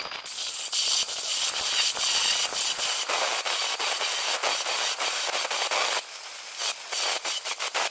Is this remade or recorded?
recorded